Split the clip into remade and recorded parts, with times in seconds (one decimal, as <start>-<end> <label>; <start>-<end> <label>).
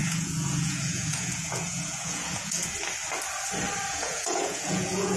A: 0.0-2.7 remade; 2.7-3.9 recorded; 3.9-5.2 remade